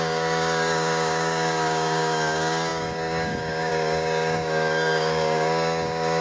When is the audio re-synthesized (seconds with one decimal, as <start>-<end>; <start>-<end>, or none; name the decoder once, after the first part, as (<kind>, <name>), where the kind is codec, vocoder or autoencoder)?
0.0-6.2 (codec, DAC)